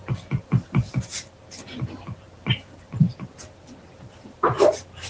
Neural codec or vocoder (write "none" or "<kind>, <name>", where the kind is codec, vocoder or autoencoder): vocoder, BigVGAN v2